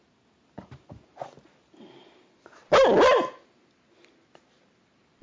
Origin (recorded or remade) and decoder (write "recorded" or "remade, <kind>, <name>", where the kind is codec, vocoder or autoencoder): recorded